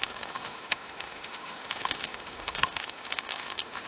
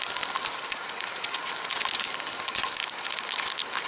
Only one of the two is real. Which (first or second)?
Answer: second